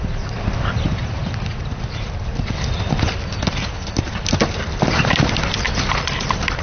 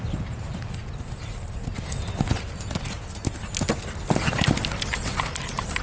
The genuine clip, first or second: second